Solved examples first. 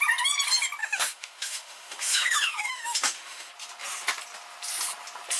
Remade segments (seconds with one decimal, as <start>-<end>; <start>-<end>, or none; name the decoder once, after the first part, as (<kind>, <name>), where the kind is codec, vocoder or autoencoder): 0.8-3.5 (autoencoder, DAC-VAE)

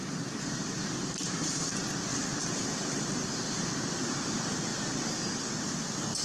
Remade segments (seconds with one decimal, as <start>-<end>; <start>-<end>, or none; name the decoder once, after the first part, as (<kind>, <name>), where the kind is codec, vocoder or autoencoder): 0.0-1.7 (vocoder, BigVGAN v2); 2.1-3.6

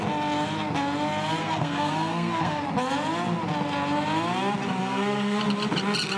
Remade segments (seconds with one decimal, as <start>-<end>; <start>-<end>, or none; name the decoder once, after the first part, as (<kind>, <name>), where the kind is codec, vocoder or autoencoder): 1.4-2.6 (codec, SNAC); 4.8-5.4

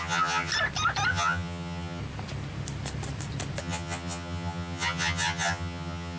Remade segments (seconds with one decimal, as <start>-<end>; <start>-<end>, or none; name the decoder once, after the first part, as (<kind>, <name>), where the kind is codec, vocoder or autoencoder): 0.0-0.5 (vocoder, HiFi-GAN); 1.1-2.0; 3.6-6.2

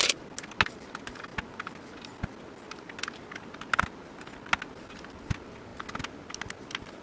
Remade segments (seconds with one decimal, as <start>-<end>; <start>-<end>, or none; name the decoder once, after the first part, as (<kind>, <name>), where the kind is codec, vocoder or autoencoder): none

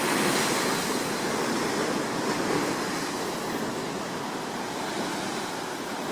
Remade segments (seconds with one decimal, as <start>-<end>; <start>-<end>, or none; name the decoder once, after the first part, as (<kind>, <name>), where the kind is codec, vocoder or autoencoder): 1.8-2.7 (vocoder, BigVGAN v2)

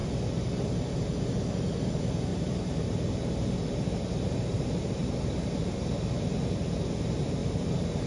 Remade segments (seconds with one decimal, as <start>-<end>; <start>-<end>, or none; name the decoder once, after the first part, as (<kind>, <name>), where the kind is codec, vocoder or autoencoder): 2.3-6.0 (vocoder, BigVGAN v2); 7.4-8.1

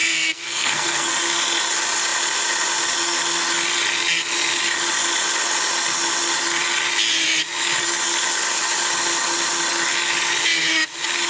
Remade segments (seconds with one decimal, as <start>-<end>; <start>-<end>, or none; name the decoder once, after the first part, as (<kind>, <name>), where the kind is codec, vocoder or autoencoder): 0.0-1.1 (codec, SNAC)